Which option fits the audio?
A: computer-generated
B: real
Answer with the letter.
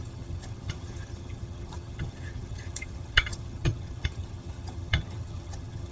A